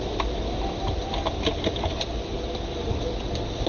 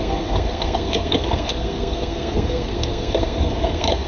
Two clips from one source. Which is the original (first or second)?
first